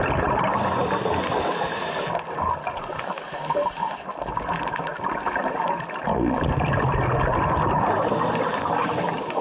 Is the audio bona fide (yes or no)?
yes